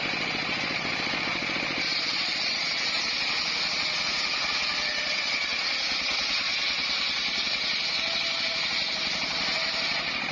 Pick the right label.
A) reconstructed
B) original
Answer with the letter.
B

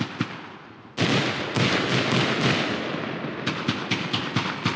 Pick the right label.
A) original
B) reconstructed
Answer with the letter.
A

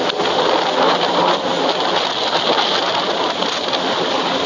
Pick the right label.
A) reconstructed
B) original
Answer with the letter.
B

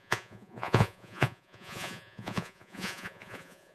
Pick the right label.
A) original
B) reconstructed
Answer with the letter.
B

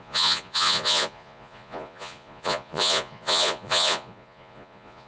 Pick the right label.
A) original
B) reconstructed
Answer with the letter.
B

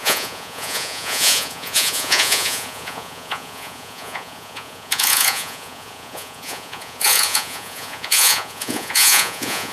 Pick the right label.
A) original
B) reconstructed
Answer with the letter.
B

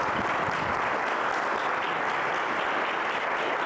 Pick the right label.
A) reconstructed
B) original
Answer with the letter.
B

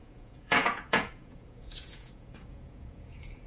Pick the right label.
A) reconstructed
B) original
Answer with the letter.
A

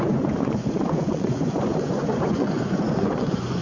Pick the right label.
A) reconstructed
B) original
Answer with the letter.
A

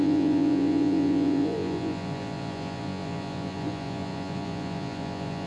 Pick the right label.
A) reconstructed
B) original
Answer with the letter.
A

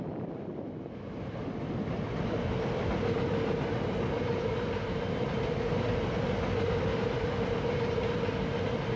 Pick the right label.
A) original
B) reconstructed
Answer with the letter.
A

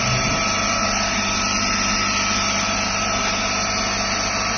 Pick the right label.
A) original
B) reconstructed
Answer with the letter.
A